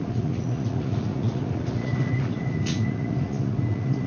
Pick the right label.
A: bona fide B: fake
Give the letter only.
B